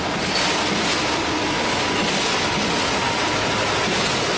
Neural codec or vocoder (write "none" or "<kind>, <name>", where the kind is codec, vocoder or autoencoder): none